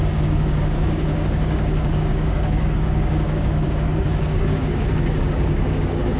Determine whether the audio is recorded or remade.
remade